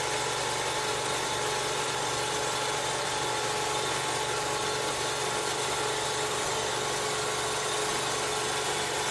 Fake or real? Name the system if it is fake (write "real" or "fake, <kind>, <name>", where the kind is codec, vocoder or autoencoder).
real